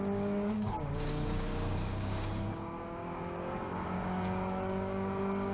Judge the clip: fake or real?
fake